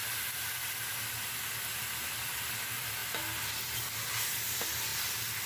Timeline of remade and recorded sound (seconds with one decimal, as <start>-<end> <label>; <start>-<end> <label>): 0.0-5.5 recorded